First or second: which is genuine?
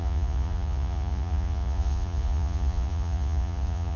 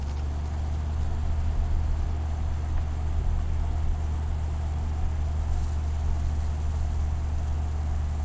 second